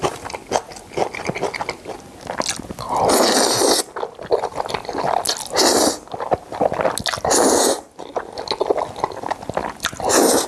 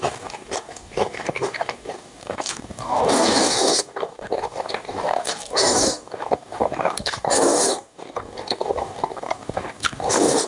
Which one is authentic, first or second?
first